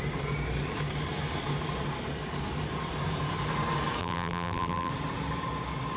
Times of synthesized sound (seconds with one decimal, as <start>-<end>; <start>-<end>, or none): 4.0-4.9